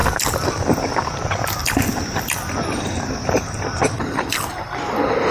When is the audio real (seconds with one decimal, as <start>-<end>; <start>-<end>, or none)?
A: 0.0-1.6; 4.4-5.3

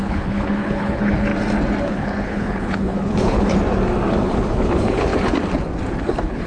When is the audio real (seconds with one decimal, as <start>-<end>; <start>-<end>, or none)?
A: 1.3-1.8; 3.5-4.1; 5.1-6.0

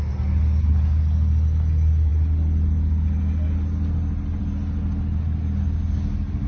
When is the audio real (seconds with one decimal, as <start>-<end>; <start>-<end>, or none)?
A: 0.0-6.5

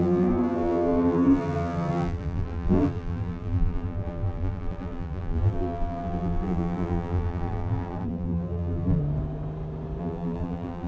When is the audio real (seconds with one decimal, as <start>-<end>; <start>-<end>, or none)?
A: 9.0-10.0

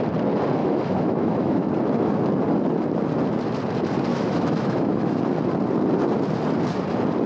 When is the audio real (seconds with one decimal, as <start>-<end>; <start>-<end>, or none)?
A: 0.0-0.6; 1.7-4.1; 5.2-7.3